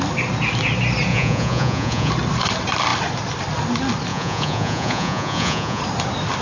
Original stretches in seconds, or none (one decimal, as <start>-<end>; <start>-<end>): 0.0-1.1; 2.1-4.1; 5.8-6.4